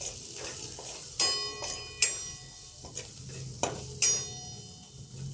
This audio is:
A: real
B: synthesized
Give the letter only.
A